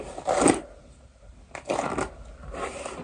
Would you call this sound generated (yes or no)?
no